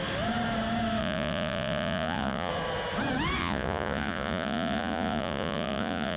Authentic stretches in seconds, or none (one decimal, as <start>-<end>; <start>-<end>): 0.0-1.0; 2.5-3.4